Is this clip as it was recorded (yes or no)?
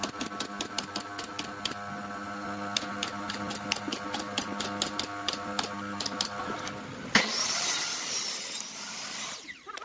yes